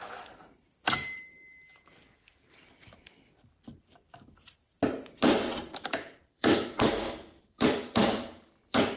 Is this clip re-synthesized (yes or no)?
yes